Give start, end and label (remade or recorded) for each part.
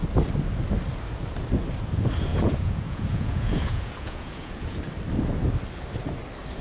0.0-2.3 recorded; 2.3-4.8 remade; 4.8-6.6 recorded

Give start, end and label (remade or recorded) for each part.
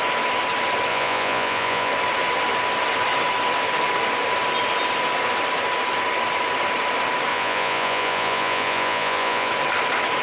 0.0-0.9 recorded; 0.9-1.9 remade; 1.9-7.3 recorded; 7.3-9.5 remade; 9.5-10.2 recorded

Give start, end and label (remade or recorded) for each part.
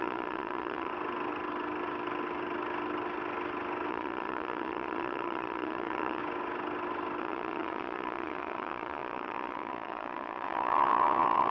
0.0-0.9 remade; 0.9-3.9 recorded; 3.9-6.2 remade; 6.2-7.2 recorded; 7.2-11.5 remade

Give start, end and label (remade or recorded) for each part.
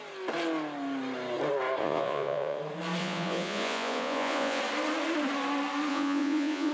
0.0-1.8 recorded; 1.8-2.6 remade; 2.6-3.0 recorded; 3.0-4.6 remade; 4.6-5.9 recorded; 5.9-6.7 remade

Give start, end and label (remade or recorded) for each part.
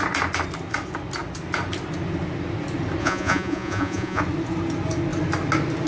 0.0-3.0 recorded; 3.0-4.2 remade; 4.2-5.9 recorded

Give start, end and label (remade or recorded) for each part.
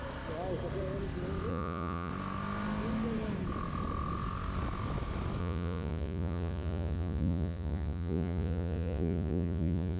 0.0-1.5 recorded; 1.5-2.1 remade; 2.1-5.4 recorded; 5.4-10.0 remade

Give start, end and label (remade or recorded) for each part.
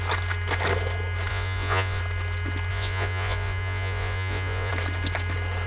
0.0-1.3 recorded; 1.3-2.0 remade; 2.0-2.7 recorded; 2.7-4.7 remade; 4.7-5.7 recorded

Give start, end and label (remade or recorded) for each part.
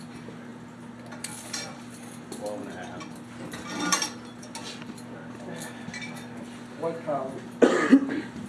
0.0-8.5 recorded